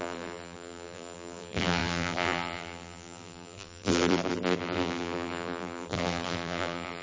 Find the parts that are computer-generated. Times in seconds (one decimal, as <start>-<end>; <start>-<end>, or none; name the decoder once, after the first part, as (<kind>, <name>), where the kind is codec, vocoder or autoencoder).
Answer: 0.0-7.0 (vocoder, BigVGAN v2)